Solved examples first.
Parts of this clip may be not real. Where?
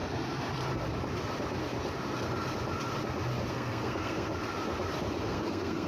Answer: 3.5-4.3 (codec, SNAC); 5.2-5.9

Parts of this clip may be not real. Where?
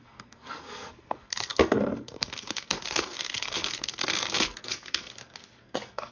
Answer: 0.0-6.1 (codec, SNAC)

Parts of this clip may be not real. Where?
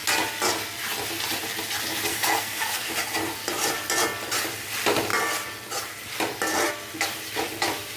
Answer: 2.1-2.9 (codec, SNAC)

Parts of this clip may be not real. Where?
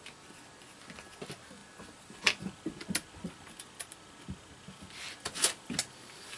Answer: none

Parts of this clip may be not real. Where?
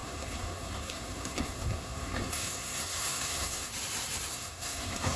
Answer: 0.0-3.7 (codec, SNAC); 4.3-5.2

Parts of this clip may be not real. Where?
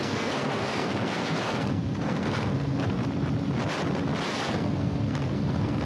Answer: 0.0-3.0 (codec, SNAC); 4.3-5.8